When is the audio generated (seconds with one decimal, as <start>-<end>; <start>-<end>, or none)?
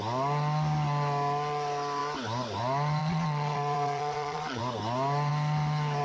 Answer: 3.0-4.6